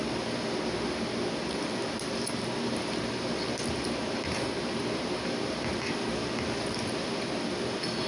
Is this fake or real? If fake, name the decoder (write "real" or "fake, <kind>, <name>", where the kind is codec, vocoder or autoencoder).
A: real